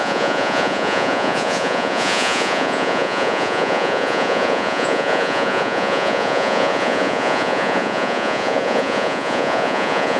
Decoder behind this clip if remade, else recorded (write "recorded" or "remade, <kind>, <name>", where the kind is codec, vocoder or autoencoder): remade, vocoder, Vocos